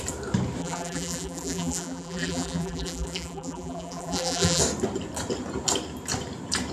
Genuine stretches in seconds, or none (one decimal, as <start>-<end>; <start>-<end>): 0.0-0.6; 4.6-6.7

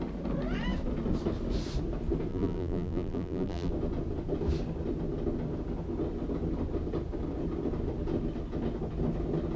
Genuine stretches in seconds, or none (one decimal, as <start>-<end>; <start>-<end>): 0.0-2.3; 3.7-9.6

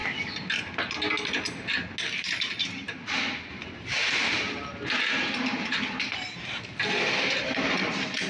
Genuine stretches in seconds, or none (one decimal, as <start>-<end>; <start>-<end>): 0.0-2.1

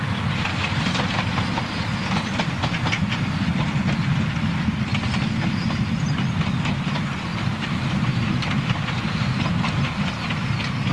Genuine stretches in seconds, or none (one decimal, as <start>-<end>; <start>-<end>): 0.0-7.3; 9.7-10.9

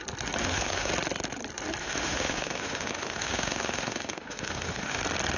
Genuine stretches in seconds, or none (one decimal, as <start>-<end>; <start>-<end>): 0.0-0.4; 0.9-1.8; 5.0-5.4

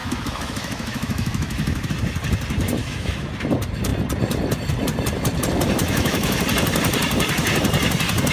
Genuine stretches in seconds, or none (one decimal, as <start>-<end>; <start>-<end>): 1.9-2.8; 3.3-5.8; 6.4-8.3

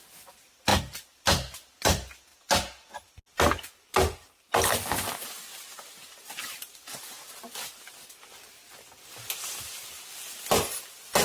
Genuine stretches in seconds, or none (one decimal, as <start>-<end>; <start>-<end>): 0.0-11.2

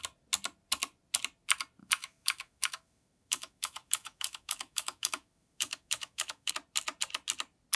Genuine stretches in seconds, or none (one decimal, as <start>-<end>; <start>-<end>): 0.0-1.8; 6.5-7.8